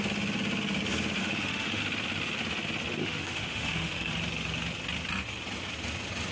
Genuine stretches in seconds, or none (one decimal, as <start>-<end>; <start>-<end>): 0.0-1.2; 1.8-3.0; 4.1-6.3